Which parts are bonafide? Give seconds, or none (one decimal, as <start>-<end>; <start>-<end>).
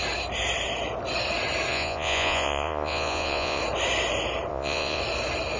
0.0-1.7; 3.6-4.5; 5.0-5.6